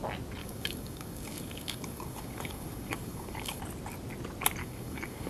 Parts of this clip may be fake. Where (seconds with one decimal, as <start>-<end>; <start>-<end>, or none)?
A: 0.4-3.6; 4.6-5.3